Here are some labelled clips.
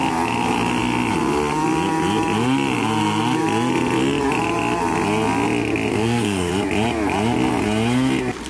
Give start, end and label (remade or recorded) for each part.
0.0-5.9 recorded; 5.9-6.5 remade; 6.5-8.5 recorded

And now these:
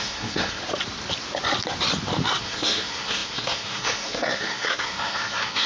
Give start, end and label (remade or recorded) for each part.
0.0-0.6 remade; 0.6-2.4 recorded; 2.4-5.7 remade

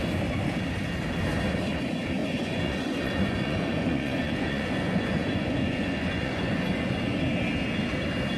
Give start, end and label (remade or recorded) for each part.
0.0-2.2 recorded; 2.2-7.2 remade; 7.2-8.4 recorded

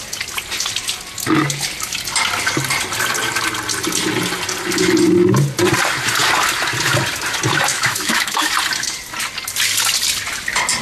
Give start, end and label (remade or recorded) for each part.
0.0-7.7 recorded; 7.7-8.5 remade; 8.5-10.8 recorded

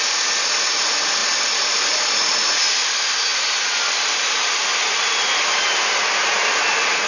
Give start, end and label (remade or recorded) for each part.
0.0-1.2 recorded; 1.2-2.1 remade; 2.1-7.1 recorded

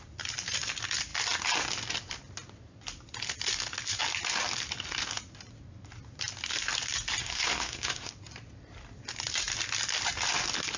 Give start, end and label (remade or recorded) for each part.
0.0-7.2 recorded; 7.2-8.1 remade; 8.1-10.8 recorded

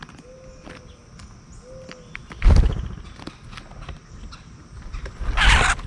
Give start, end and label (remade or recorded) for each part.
0.0-5.9 recorded

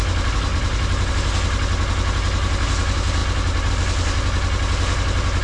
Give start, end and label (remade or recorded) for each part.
0.0-0.5 recorded; 0.5-1.1 remade; 1.1-5.4 recorded